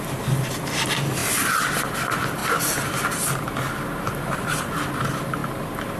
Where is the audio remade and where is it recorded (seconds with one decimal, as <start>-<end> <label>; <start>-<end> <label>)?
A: 0.0-5.4 remade; 5.4-6.0 recorded